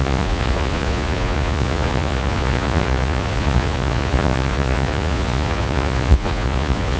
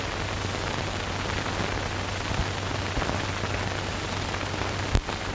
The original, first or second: second